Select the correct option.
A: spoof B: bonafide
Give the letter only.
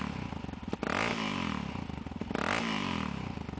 B